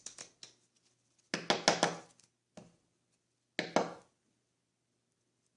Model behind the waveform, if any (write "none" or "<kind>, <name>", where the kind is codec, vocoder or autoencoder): none